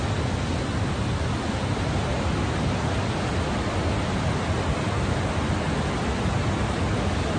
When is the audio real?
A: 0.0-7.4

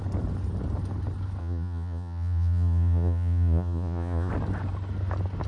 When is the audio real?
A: 0.0-1.4; 4.3-5.5